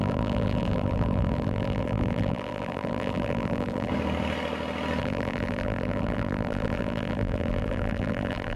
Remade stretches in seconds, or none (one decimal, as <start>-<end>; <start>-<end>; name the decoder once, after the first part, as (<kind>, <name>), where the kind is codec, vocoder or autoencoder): 0.0-3.9 (vocoder, BigVGAN v2); 5.0-8.6